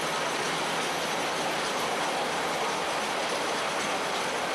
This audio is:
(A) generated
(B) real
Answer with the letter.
B